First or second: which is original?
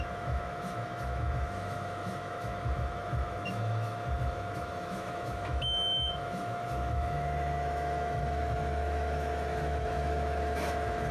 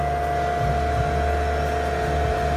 second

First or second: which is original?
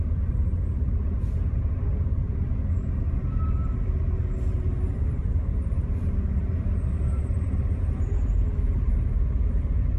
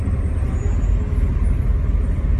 second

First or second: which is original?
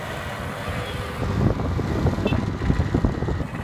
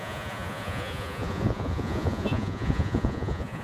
first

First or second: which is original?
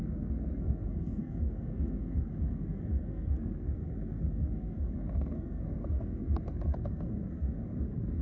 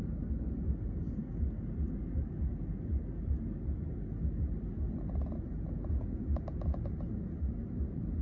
second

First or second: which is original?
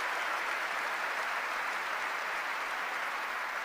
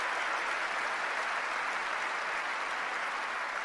second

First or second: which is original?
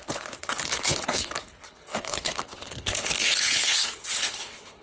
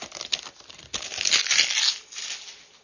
second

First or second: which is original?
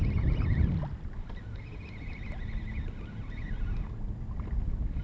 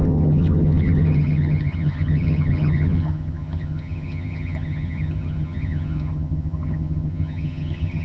first